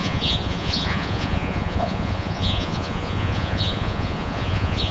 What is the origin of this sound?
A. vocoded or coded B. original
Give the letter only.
A